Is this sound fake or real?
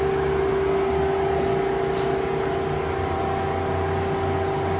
real